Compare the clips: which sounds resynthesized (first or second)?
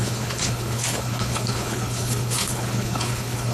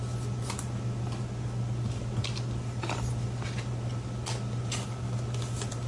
first